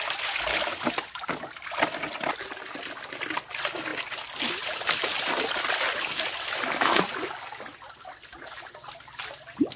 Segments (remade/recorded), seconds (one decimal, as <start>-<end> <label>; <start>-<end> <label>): 0.0-9.8 recorded